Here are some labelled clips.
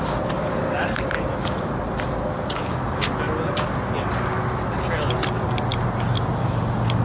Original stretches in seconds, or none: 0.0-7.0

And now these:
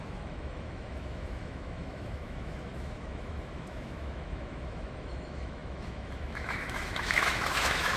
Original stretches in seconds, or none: none

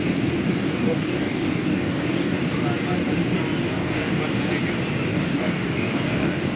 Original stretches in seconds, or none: 0.0-0.6; 2.4-3.7; 4.2-5.1